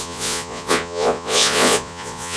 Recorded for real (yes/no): no